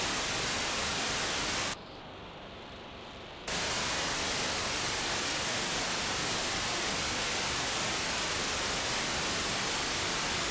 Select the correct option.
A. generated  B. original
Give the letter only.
B